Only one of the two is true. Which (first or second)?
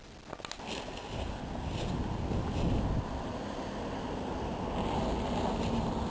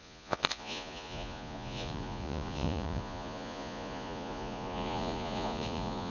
first